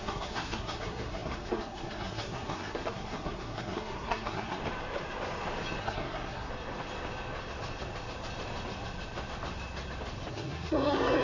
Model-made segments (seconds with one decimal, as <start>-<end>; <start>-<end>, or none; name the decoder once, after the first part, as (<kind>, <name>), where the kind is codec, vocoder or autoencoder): 0.0-4.6 (codec, SNAC); 5.8-6.5; 10.3-11.2